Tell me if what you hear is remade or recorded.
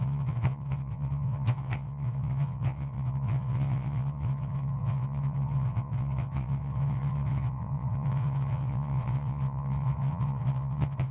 remade